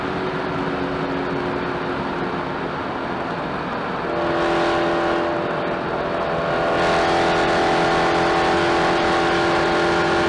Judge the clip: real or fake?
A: real